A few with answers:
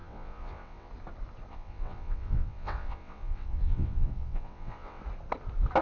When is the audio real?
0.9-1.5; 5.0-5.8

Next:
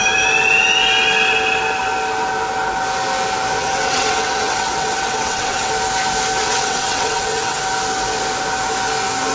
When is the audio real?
0.0-3.6; 5.7-6.4; 7.6-9.3

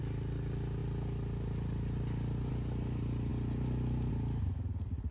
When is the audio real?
0.0-5.1